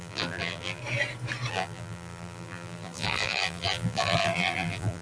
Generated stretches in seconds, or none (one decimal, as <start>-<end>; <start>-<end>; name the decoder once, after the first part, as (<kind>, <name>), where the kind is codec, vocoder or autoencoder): 0.0-0.8 (vocoder, BigVGAN v2); 1.5-5.0